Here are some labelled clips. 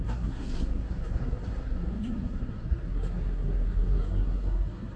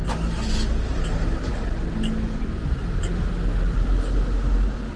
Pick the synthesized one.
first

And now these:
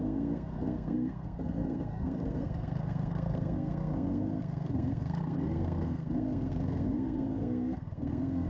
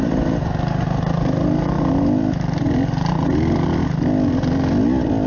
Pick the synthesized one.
first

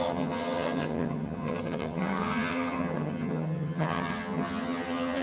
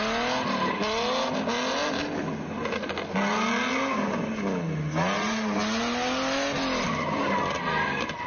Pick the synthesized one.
first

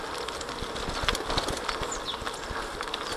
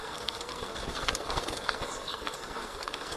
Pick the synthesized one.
second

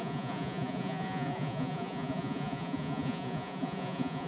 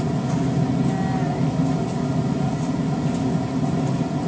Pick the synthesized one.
first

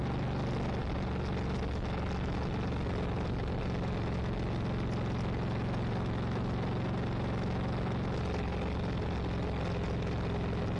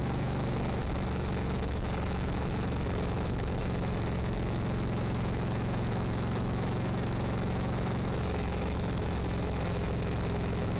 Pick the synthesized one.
second